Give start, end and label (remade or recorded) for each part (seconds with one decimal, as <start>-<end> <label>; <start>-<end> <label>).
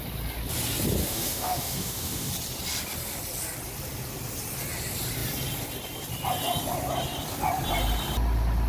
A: 0.0-1.0 recorded; 1.0-2.3 remade; 2.3-8.7 recorded